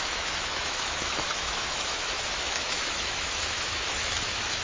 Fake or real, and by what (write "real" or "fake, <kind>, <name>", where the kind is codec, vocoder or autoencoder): fake, autoencoder, DAC-VAE